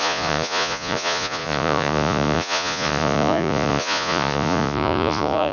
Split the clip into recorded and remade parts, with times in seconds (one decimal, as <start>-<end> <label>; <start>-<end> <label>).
0.0-5.5 remade